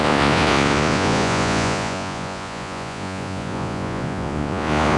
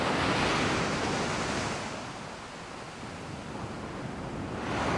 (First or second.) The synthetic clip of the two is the first